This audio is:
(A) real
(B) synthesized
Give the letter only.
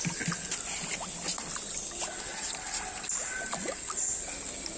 A